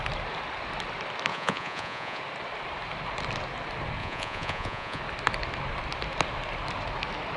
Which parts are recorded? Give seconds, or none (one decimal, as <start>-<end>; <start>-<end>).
0.0-1.3; 2.2-4.0; 5.0-7.4